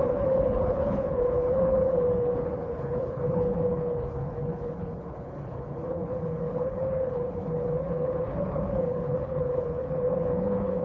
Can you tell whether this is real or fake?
fake